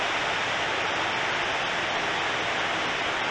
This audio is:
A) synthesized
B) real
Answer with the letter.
B